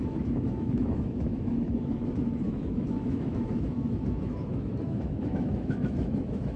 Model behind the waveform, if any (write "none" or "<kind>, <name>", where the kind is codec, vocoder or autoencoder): autoencoder, DAC-VAE